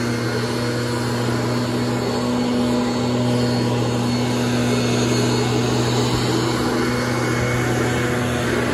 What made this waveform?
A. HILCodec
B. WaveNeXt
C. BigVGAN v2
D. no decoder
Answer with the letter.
D